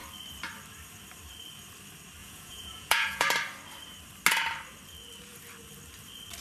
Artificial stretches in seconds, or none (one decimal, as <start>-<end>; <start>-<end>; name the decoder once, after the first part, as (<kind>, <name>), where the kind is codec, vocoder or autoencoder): 2.2-3.3 (vocoder, Vocos)